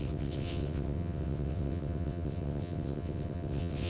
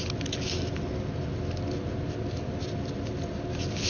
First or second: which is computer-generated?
first